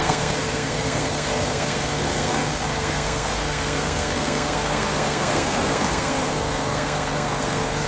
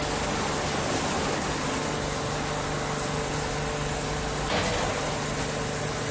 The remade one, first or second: first